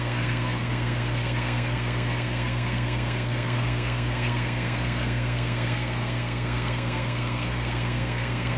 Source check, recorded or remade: remade